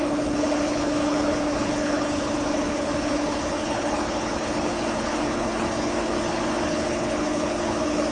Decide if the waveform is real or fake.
fake